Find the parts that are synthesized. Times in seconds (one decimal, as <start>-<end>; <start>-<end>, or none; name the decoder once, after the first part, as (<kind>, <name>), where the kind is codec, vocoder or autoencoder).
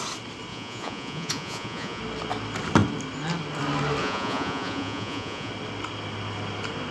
0.5-2.0 (vocoder, Vocos); 4.0-5.5